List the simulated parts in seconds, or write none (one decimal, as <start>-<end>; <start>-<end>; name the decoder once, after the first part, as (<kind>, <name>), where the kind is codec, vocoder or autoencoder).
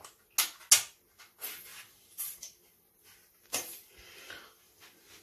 1.7-4.8 (vocoder, BigVGAN v2)